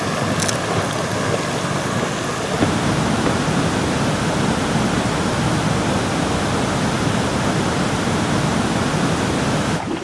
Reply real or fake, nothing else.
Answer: real